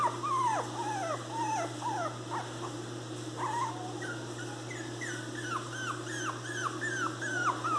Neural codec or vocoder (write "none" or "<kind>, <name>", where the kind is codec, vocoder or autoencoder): none